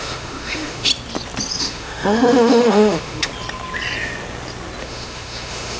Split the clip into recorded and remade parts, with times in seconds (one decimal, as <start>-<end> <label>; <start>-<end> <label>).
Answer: 0.0-0.9 remade; 0.9-1.6 recorded; 1.6-3.3 remade; 3.3-4.8 recorded; 4.8-5.8 remade